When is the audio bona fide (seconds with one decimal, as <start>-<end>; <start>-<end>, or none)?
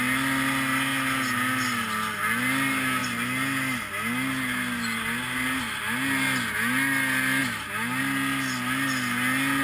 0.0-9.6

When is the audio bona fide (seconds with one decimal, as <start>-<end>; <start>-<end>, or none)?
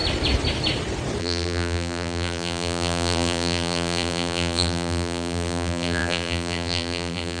0.0-1.2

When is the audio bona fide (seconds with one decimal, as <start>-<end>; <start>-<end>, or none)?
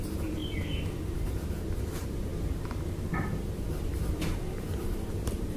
0.4-1.1; 2.3-3.5